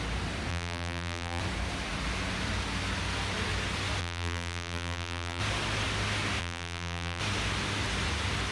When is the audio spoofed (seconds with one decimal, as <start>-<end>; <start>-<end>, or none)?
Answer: 0.5-1.4; 4.0-5.4; 6.4-7.2